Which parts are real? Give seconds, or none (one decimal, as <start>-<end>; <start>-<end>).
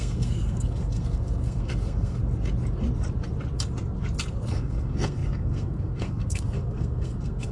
2.2-4.3